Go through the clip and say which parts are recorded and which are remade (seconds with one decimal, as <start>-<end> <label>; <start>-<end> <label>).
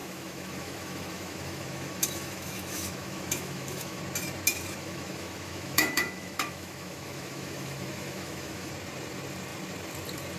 0.0-4.0 remade; 4.0-4.8 recorded; 4.8-8.7 remade; 8.7-10.4 recorded